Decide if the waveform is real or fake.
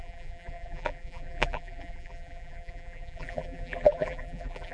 fake